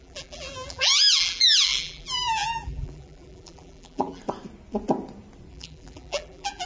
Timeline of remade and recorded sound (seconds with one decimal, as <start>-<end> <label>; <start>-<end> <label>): 0.0-4.2 remade; 4.2-5.5 recorded; 5.5-6.7 remade